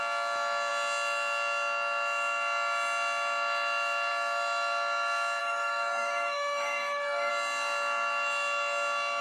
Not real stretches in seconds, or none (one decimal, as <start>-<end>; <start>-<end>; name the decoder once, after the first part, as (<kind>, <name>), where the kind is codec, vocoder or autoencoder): 5.4-7.3 (codec, DAC)